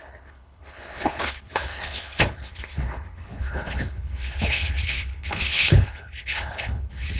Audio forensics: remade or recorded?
remade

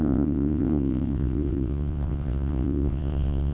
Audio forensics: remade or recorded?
remade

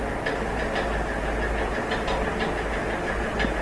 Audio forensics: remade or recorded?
recorded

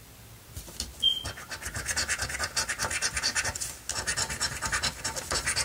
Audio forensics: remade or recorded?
recorded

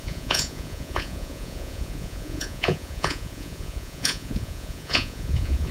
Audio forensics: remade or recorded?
remade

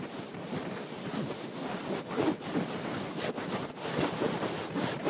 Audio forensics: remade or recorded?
recorded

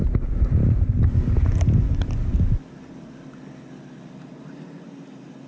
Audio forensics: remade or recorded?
recorded